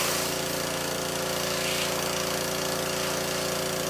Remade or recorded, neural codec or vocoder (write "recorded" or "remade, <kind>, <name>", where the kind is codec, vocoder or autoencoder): recorded